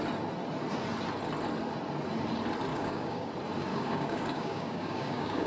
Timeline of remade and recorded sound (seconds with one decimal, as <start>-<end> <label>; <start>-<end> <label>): 0.0-2.7 recorded; 2.7-3.3 remade; 3.3-3.7 recorded; 3.7-5.5 remade